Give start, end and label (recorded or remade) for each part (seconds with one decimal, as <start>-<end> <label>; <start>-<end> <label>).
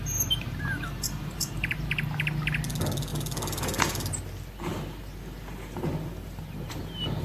0.0-1.9 remade; 1.9-3.1 recorded; 3.1-4.2 remade; 4.2-4.7 recorded; 4.7-6.8 remade; 6.8-7.2 recorded